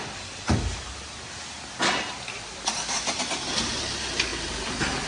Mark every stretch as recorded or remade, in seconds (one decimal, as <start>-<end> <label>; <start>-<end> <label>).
0.0-5.1 recorded